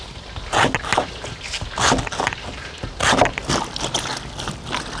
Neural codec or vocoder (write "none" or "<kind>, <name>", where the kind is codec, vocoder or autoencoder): none